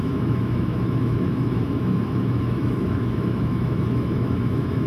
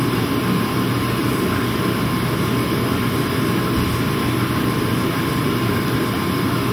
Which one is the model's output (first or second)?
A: first